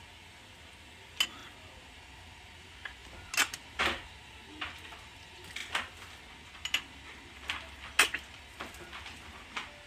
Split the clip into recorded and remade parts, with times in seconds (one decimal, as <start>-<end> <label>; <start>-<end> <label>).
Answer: 0.0-9.9 recorded

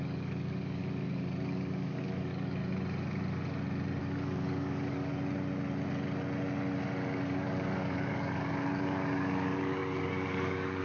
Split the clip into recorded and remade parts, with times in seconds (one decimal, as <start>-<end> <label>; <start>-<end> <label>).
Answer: 0.0-0.8 remade; 0.8-1.5 recorded; 1.5-2.6 remade; 2.6-4.0 recorded; 4.0-5.1 remade; 5.1-7.1 recorded; 7.1-10.8 remade

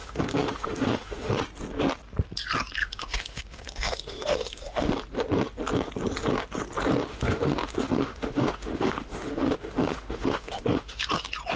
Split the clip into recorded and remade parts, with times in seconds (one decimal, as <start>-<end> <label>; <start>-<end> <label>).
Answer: 0.0-1.4 remade; 1.4-2.8 recorded; 2.8-4.9 remade; 4.9-7.1 recorded; 7.1-11.1 remade; 11.1-11.6 recorded

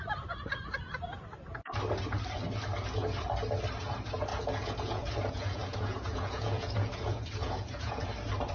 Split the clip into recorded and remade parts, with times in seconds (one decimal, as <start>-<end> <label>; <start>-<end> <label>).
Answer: 0.0-4.3 recorded; 4.3-8.0 remade; 8.0-8.5 recorded